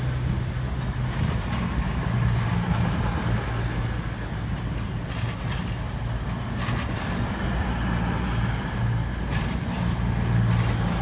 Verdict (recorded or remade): recorded